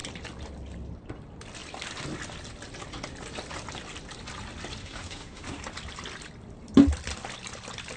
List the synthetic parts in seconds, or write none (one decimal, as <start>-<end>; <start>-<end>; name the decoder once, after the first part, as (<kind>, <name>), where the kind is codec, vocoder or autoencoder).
4.8-5.6 (autoencoder, DAC-VAE)